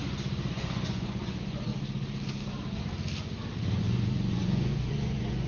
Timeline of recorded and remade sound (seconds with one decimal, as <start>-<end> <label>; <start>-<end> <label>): 0.0-0.5 recorded; 0.5-1.7 remade; 1.7-3.8 recorded; 3.8-5.5 remade